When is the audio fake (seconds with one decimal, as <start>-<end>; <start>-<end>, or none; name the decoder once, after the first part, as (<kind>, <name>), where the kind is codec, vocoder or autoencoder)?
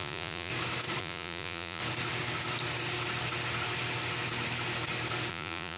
0.0-0.5 (vocoder, Vocos); 1.0-1.8; 5.3-5.8